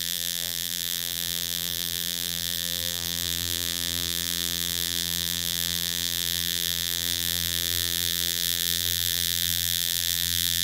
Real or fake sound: fake